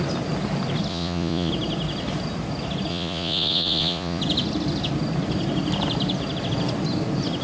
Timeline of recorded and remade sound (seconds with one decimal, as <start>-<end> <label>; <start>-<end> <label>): 0.0-0.9 recorded; 0.9-1.5 remade; 1.5-2.9 recorded; 2.9-4.2 remade; 4.2-7.4 recorded